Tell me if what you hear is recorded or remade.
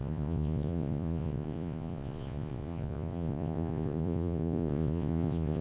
remade